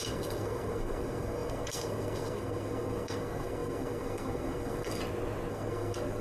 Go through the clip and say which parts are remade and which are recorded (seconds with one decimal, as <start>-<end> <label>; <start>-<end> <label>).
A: 0.0-5.0 remade; 5.0-5.5 recorded; 5.5-6.2 remade